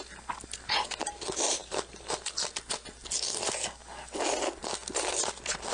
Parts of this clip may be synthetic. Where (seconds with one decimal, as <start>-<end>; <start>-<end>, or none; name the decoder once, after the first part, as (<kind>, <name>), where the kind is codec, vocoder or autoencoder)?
none